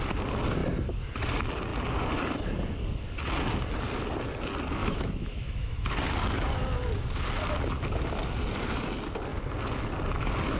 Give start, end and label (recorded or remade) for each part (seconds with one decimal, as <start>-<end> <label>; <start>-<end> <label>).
0.0-4.8 recorded; 4.8-5.9 remade; 5.9-10.6 recorded